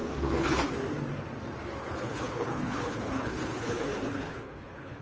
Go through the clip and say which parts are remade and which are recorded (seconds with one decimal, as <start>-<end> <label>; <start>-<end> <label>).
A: 0.0-0.7 remade; 0.7-1.8 recorded; 1.8-5.0 remade